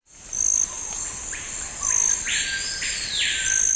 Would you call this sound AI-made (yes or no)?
no